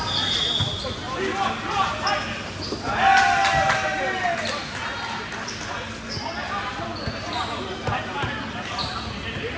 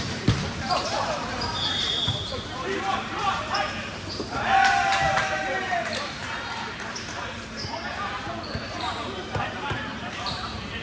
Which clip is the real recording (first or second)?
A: first